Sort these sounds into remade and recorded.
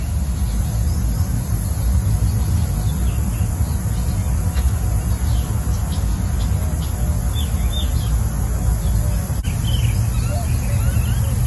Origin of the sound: recorded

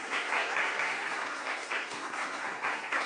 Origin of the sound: remade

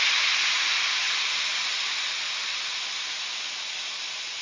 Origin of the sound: recorded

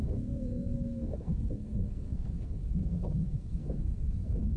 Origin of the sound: remade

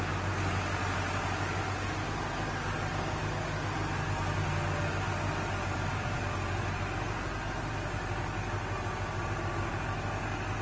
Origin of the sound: recorded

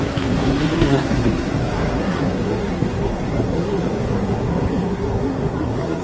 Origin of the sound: remade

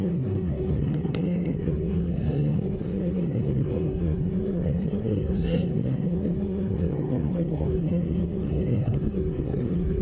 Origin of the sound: remade